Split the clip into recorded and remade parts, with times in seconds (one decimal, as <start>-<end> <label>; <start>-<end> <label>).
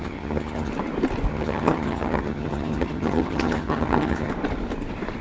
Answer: 0.0-0.7 remade; 0.7-1.3 recorded; 1.3-4.3 remade; 4.3-5.2 recorded